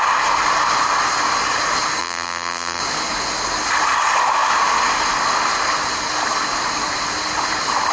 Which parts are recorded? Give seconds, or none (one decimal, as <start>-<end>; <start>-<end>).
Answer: 0.0-2.0; 2.8-7.9